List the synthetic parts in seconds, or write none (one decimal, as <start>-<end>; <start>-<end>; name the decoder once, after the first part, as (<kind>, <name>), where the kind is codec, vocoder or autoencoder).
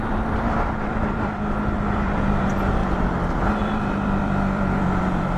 0.0-2.8 (vocoder, BigVGAN v2); 3.6-5.4